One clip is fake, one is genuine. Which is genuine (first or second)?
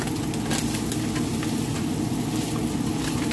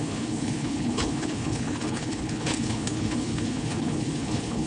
first